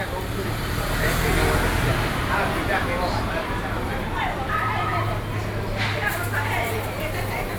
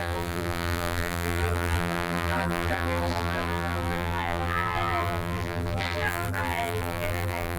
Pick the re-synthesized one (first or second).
second